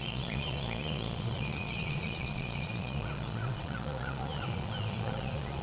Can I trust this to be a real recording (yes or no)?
no